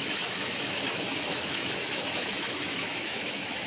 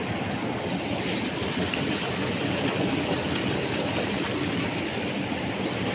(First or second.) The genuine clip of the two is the second